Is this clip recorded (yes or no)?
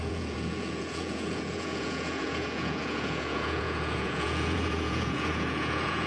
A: no